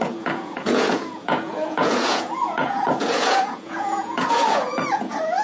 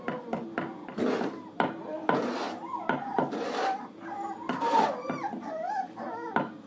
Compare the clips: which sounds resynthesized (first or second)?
first